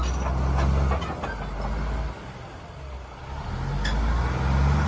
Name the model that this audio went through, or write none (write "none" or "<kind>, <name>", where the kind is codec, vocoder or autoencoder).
none